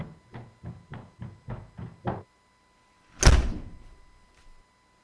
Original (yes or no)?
yes